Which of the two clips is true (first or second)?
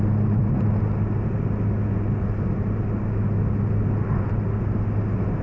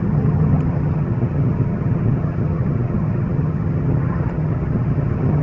first